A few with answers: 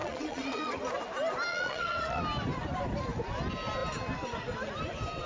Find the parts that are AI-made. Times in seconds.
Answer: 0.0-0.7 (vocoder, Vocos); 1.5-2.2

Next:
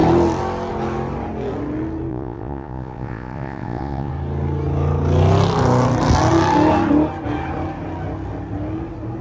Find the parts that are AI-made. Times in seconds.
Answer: 2.1-4.1 (vocoder, Vocos)

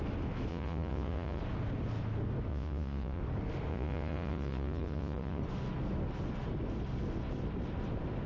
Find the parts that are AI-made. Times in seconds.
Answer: 0.5-1.4 (vocoder, Vocos); 2.5-3.2; 3.7-5.4

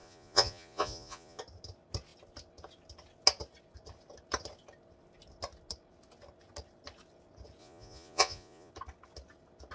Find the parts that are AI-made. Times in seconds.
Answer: 0.0-1.4 (vocoder, Vocos); 7.6-8.7

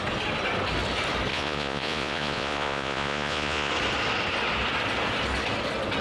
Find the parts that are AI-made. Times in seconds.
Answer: 1.3-3.7 (vocoder, Vocos)